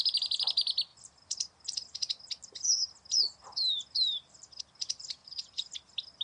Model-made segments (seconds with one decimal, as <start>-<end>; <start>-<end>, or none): 5.2-5.7